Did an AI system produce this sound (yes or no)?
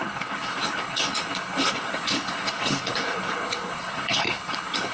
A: yes